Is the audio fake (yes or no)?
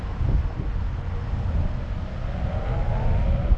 no